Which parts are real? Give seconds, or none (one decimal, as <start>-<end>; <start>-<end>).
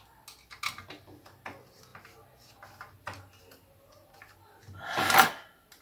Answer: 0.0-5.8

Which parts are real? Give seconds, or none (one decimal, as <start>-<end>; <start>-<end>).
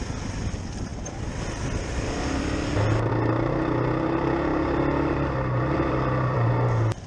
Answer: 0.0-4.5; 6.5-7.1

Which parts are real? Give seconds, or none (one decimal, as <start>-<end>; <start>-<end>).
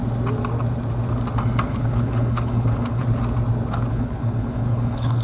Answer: 0.0-1.6; 3.0-3.9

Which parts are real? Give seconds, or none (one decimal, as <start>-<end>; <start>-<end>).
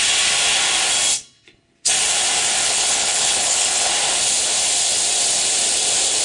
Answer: 0.0-2.6; 3.9-6.2